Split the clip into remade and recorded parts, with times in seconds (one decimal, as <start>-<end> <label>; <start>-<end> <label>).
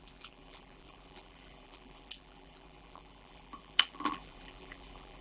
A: 0.0-5.2 remade